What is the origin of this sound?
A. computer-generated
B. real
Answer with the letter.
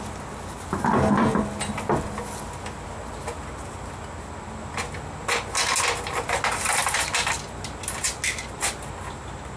B